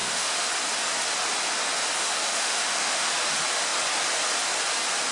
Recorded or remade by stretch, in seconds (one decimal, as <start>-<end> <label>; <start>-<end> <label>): 0.0-0.5 remade; 0.5-2.0 recorded; 2.0-3.1 remade; 3.1-5.1 recorded